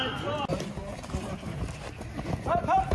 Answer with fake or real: real